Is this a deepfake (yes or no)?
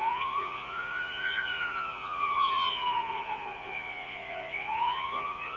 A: yes